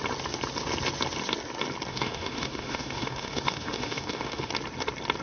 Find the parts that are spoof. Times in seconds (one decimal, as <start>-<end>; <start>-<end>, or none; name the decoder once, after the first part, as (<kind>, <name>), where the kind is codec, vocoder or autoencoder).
1.9-4.5 (autoencoder, DAC-VAE)